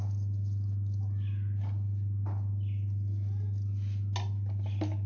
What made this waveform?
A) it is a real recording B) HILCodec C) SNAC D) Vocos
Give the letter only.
A